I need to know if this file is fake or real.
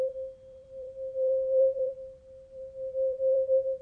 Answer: fake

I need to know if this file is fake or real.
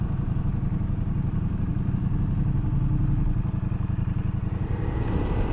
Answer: real